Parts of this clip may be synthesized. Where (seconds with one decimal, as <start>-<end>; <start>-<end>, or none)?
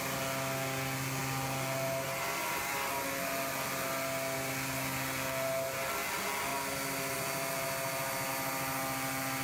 none